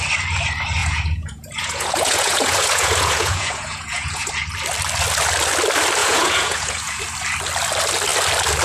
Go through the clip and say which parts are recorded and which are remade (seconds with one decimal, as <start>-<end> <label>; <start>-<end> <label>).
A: 0.0-0.8 recorded; 0.8-4.3 remade; 4.3-6.0 recorded; 6.0-7.0 remade; 7.0-8.6 recorded